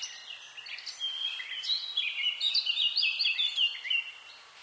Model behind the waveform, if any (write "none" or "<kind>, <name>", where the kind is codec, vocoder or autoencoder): none